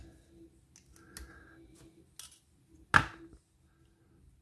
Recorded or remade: recorded